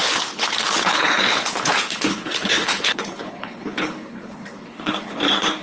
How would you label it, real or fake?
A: fake